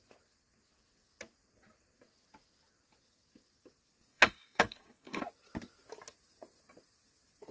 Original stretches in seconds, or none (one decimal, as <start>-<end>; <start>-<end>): 0.0-4.1; 5.2-7.5